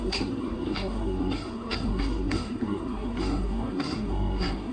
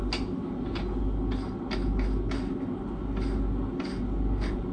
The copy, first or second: first